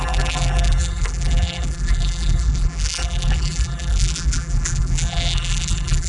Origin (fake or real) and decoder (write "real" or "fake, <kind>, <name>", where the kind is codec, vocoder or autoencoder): fake, vocoder, BigVGAN v2